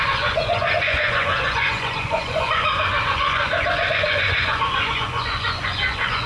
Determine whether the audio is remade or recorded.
remade